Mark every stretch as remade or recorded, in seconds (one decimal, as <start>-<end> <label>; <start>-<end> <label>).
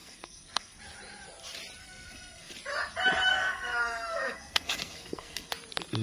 0.0-0.8 remade; 0.8-1.8 recorded; 1.8-2.5 remade; 2.5-3.3 recorded; 3.3-5.5 remade; 5.5-6.0 recorded